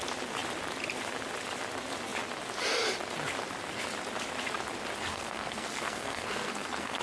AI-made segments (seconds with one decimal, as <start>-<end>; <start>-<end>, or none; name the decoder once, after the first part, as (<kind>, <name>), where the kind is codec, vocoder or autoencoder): 5.1-7.0 (codec, SNAC)